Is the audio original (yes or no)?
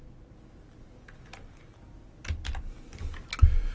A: yes